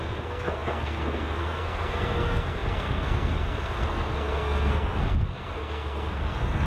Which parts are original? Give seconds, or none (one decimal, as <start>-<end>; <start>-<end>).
none